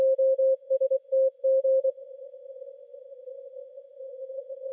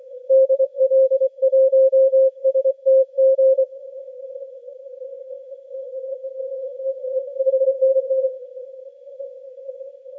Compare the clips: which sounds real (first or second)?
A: first